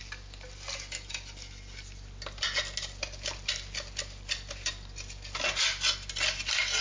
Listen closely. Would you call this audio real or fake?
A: real